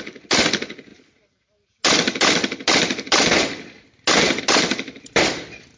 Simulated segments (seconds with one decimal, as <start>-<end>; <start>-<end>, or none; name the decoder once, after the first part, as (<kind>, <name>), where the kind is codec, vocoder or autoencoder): none